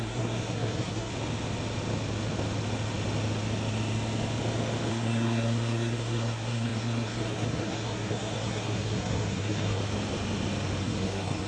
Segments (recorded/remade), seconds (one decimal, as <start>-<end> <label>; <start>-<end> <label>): 0.0-1.1 remade; 1.1-4.9 recorded; 4.9-9.8 remade; 9.8-10.8 recorded; 10.8-11.5 remade